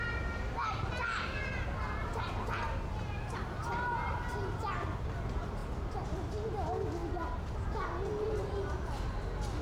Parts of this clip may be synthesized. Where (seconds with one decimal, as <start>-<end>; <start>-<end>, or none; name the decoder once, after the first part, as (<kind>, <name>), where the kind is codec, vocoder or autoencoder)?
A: none